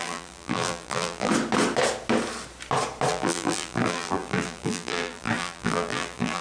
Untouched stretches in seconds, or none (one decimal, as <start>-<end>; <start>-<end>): 1.3-3.1